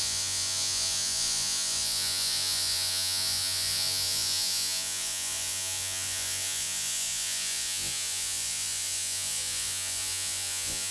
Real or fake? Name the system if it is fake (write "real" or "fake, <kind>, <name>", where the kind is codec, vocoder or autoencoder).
fake, vocoder, Vocos